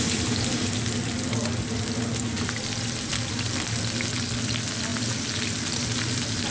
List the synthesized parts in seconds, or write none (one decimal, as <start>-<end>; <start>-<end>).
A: none